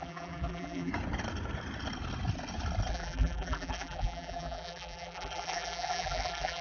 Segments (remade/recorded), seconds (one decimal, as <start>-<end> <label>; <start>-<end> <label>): 0.0-0.9 remade; 0.9-2.9 recorded; 2.9-6.6 remade